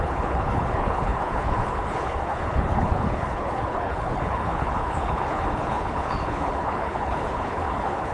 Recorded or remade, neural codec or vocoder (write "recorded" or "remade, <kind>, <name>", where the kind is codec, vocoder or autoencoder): remade, codec, HILCodec